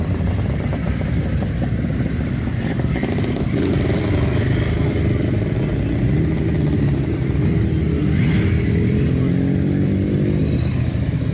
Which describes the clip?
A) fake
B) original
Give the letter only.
B